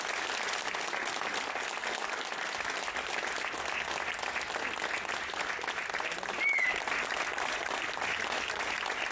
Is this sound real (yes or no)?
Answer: yes